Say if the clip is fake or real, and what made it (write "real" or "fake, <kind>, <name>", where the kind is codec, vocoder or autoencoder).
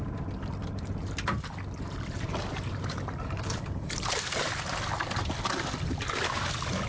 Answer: real